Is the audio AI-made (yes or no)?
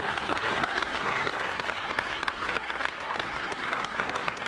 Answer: yes